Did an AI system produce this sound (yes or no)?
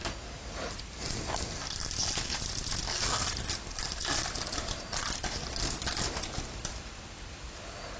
no